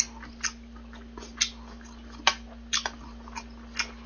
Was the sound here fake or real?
real